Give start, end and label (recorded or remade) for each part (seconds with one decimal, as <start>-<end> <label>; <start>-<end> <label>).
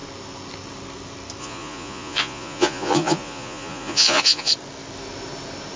0.0-1.4 recorded; 1.4-4.5 remade; 4.5-5.8 recorded